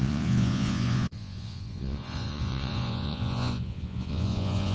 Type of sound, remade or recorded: remade